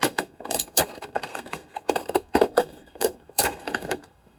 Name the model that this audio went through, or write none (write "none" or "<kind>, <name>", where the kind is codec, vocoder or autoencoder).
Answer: codec, SNAC